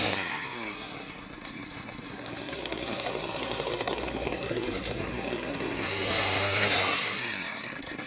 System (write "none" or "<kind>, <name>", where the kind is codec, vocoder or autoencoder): codec, SNAC